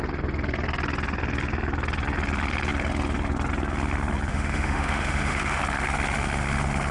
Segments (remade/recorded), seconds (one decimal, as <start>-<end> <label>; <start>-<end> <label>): 0.0-4.3 recorded; 4.3-5.6 remade; 5.6-6.9 recorded